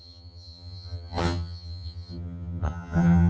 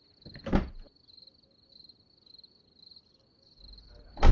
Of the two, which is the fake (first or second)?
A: first